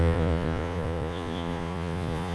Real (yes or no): no